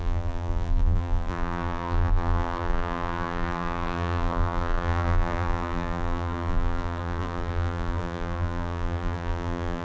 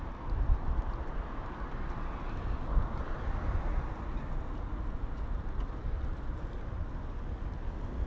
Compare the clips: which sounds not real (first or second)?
first